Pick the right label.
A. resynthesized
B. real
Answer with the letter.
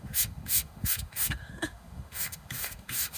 A